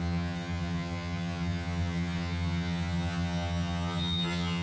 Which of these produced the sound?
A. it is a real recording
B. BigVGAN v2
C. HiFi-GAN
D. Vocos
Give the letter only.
C